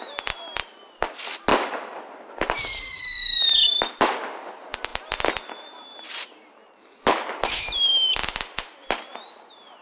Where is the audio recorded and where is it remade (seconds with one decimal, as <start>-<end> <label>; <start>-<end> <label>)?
0.0-2.8 recorded; 2.8-3.4 remade; 3.4-9.8 recorded

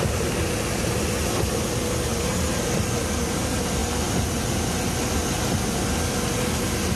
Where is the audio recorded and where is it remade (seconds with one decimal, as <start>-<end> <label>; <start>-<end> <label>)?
0.0-7.0 recorded

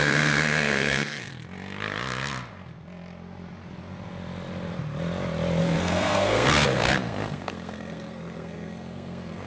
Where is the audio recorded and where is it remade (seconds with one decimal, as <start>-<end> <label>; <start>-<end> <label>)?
0.0-1.3 remade; 1.3-5.6 recorded; 5.6-9.5 remade

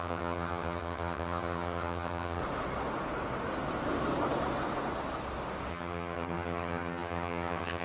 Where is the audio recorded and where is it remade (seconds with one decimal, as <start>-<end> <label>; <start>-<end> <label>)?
0.0-2.4 remade; 2.4-5.7 recorded; 5.7-7.8 remade

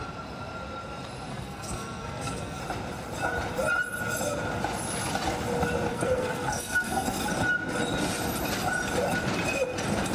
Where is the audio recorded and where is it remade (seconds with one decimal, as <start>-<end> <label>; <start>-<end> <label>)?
0.0-1.3 recorded; 1.3-2.6 remade; 2.6-5.9 recorded; 5.9-7.2 remade; 7.2-10.1 recorded

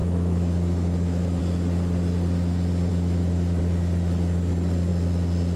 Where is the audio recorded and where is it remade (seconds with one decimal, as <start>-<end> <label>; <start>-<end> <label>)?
0.0-1.4 remade; 1.4-2.9 recorded; 2.9-3.6 remade; 3.6-5.6 recorded